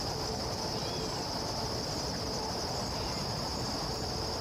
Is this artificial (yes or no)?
no